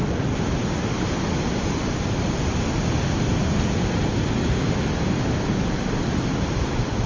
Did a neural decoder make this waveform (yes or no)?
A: no